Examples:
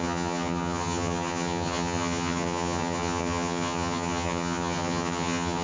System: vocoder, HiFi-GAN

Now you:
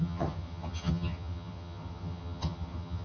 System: vocoder, HiFi-GAN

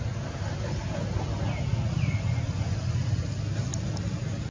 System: none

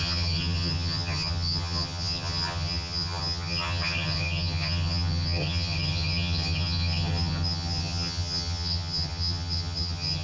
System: vocoder, HiFi-GAN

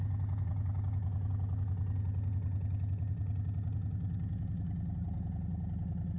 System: none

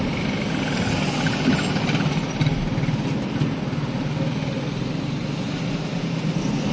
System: none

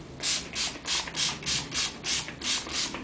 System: none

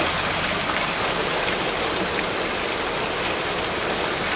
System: none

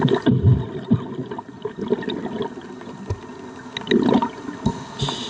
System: none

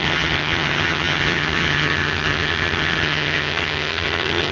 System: vocoder, HiFi-GAN